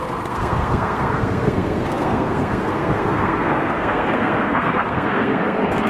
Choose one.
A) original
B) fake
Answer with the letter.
B